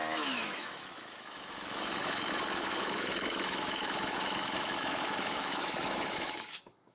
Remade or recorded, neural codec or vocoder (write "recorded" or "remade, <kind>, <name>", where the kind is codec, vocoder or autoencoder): remade, autoencoder, DAC-VAE